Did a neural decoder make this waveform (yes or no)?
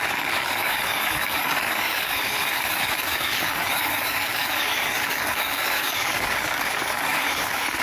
yes